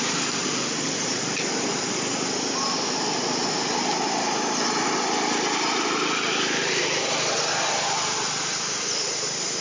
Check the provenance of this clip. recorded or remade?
recorded